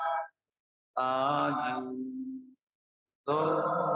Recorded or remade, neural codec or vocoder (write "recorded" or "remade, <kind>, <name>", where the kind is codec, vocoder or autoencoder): recorded